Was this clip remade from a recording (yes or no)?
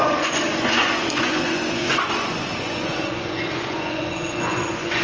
yes